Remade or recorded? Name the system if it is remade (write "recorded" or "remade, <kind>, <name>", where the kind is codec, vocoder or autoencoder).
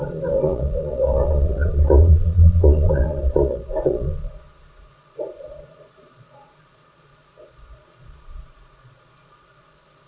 remade, vocoder, Vocos